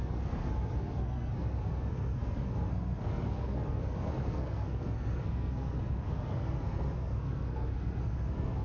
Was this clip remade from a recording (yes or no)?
yes